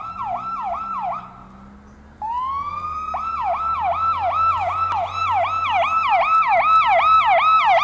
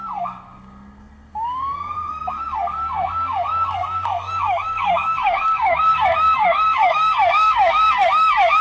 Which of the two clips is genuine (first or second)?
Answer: first